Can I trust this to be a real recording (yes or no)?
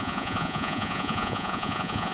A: no